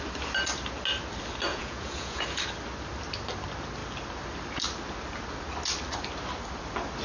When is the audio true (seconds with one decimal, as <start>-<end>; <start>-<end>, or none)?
0.0-1.5; 2.4-7.0